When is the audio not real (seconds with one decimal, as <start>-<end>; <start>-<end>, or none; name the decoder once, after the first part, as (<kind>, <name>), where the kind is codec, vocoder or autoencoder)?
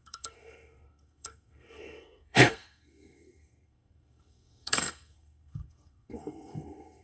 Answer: 0.0-7.0 (codec, SNAC)